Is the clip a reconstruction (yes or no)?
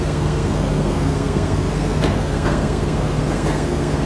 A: yes